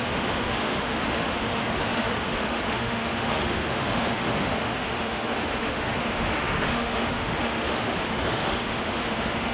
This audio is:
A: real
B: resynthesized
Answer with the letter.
B